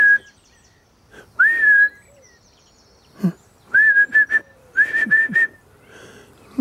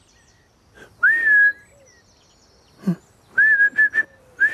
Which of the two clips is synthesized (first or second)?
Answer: first